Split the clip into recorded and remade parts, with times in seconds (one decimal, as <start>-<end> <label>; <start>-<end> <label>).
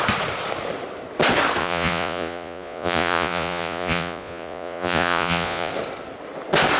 0.0-1.6 recorded; 1.6-5.7 remade; 5.7-6.8 recorded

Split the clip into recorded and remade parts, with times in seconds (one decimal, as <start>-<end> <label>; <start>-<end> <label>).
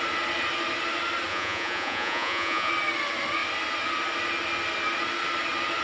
0.0-1.3 recorded; 1.3-2.7 remade; 2.7-5.8 recorded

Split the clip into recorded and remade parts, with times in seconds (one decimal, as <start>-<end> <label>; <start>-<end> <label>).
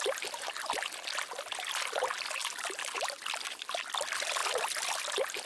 0.0-5.5 recorded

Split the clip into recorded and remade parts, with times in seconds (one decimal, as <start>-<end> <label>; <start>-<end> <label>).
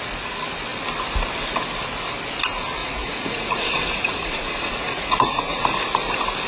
0.0-2.8 recorded; 2.8-5.6 remade; 5.6-6.5 recorded